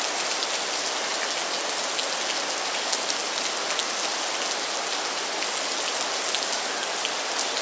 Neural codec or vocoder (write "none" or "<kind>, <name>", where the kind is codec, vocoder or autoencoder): none